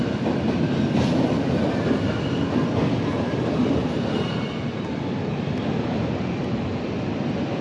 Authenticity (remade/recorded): recorded